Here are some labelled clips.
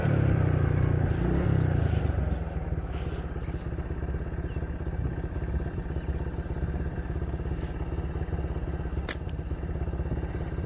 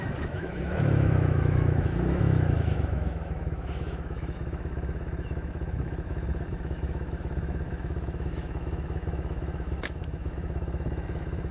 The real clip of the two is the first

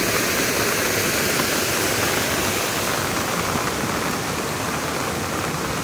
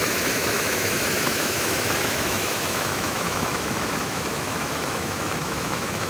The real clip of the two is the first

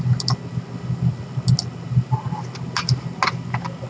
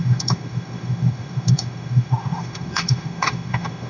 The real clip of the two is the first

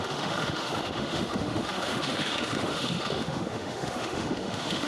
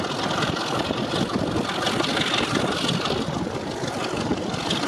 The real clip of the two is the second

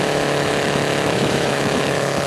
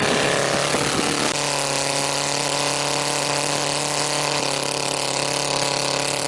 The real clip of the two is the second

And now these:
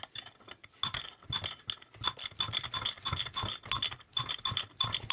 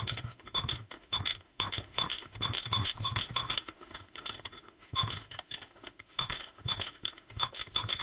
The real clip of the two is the first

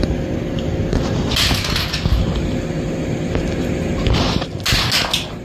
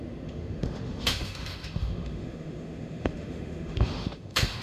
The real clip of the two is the first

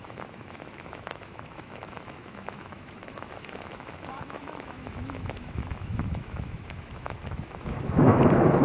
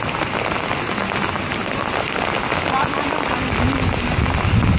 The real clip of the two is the second